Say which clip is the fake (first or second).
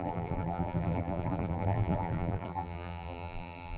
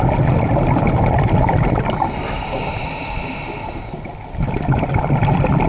first